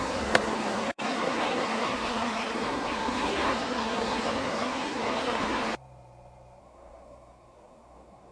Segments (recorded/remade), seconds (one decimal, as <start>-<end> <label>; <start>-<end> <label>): 0.0-5.6 remade; 5.6-6.6 recorded; 6.6-8.3 remade